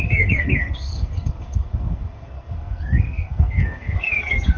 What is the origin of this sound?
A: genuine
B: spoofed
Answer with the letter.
B